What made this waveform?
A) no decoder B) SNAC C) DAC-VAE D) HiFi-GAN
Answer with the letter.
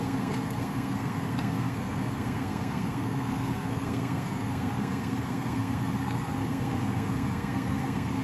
B